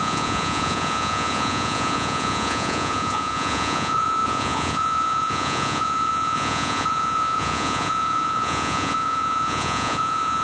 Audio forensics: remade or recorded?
remade